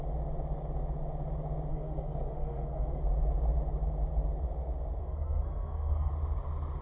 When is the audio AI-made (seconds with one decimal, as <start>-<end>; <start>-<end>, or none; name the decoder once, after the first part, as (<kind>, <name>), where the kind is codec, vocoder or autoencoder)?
1.7-3.0 (codec, SNAC); 5.0-6.1